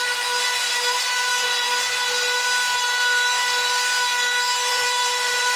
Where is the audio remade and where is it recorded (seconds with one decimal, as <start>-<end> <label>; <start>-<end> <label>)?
0.0-1.3 remade; 1.3-4.7 recorded; 4.7-5.6 remade